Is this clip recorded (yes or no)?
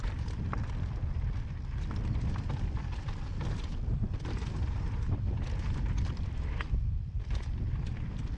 no